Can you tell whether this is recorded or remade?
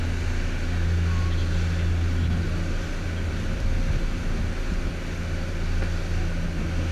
recorded